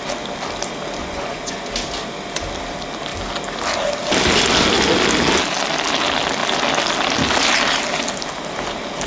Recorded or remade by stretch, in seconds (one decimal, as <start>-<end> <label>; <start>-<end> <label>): 0.0-1.0 recorded; 1.0-1.7 remade; 1.7-9.1 recorded